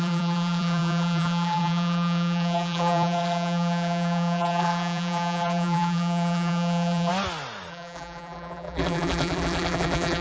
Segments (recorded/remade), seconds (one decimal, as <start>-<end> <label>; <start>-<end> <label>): 0.0-7.1 remade; 7.1-7.7 recorded; 7.7-10.2 remade